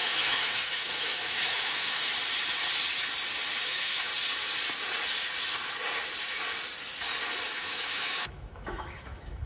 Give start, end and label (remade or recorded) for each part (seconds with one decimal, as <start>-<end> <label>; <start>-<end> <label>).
0.0-2.1 remade; 2.1-3.6 recorded; 3.6-4.1 remade; 4.1-7.5 recorded; 7.5-9.5 remade